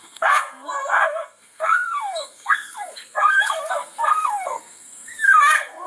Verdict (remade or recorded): remade